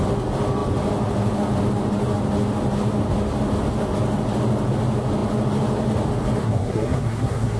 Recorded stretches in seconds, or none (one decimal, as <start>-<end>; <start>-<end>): 0.0-6.4